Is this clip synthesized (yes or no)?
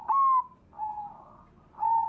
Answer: no